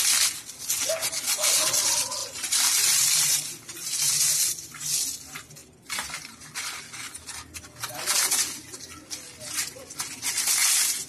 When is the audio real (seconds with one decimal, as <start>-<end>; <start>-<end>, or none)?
0.0-2.2; 4.1-5.6; 6.2-10.6